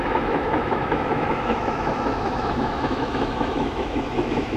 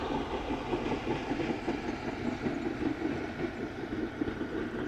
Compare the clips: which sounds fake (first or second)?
first